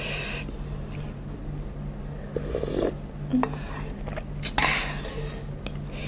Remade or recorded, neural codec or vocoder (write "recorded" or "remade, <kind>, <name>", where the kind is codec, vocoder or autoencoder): recorded